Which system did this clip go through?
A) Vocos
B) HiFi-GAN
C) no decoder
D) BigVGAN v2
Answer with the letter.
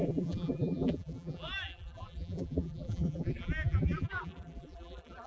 D